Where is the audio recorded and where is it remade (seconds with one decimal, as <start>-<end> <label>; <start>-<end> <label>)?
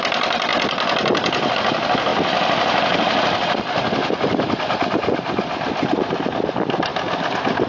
0.0-7.7 recorded